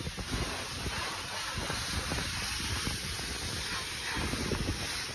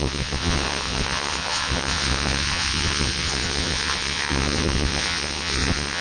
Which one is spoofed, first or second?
second